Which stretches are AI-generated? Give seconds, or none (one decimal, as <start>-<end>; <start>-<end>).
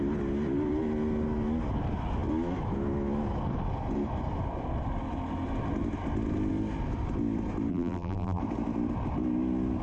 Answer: 7.7-8.4